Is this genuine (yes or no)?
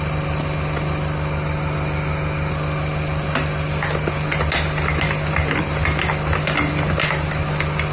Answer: yes